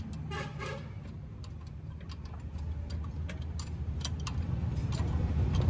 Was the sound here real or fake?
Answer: real